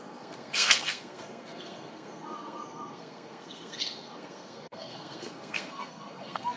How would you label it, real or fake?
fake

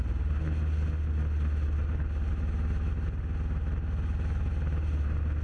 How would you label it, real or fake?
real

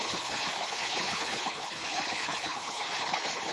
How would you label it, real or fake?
fake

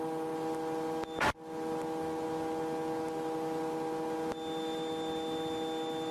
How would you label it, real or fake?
real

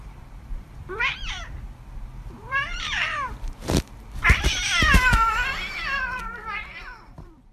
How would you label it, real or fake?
fake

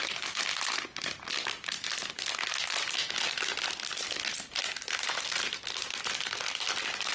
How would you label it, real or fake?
real